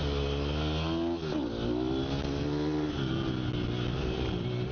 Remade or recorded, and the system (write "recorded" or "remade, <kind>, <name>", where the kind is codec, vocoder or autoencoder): recorded